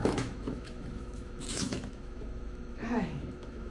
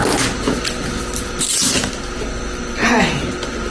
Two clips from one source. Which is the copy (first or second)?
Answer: first